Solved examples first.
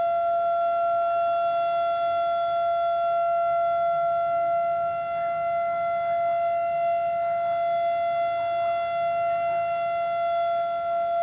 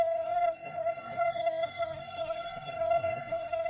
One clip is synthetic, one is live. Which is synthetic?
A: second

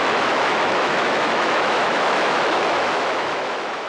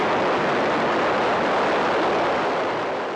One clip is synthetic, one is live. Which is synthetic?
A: first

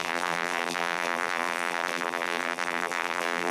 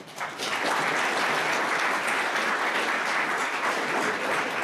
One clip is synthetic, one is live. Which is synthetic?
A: first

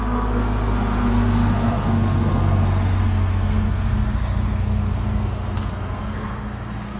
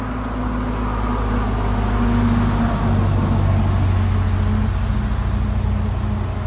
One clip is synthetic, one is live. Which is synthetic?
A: first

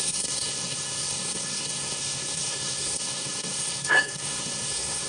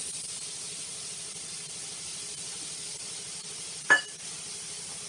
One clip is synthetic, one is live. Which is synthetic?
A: first